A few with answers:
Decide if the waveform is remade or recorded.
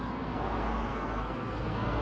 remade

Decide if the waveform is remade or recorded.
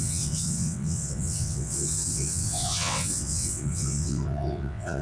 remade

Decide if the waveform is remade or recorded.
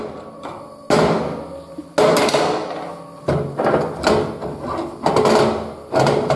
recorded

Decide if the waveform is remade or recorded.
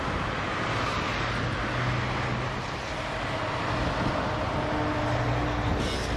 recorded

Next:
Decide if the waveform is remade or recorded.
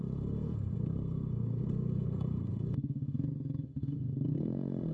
remade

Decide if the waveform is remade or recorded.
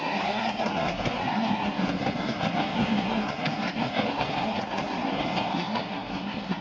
remade